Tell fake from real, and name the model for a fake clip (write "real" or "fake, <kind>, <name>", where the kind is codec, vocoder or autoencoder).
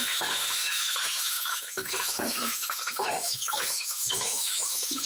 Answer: fake, autoencoder, DAC-VAE